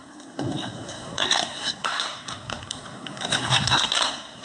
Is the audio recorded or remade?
remade